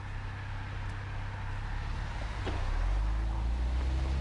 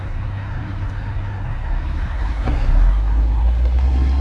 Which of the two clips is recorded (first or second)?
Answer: first